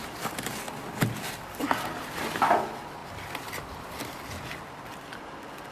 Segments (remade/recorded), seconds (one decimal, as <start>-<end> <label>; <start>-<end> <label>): 0.0-5.7 recorded